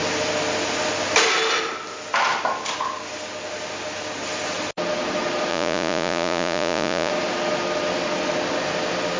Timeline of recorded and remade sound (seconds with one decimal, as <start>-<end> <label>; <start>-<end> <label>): 0.0-5.5 recorded; 5.5-7.1 remade; 7.1-9.2 recorded